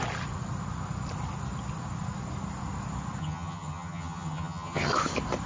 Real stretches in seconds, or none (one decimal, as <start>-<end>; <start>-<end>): 0.0-3.2; 4.9-5.5

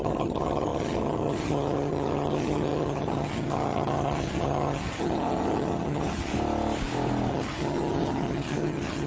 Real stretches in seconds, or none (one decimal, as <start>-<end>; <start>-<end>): 6.3-7.3